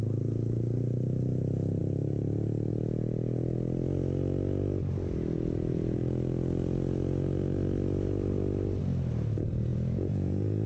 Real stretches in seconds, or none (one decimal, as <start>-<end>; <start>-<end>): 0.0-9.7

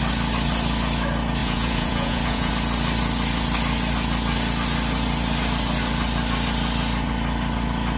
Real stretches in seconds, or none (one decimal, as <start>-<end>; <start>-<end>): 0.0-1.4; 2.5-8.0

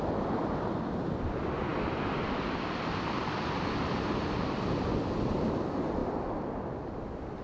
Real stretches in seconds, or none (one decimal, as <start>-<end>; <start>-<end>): 0.0-7.4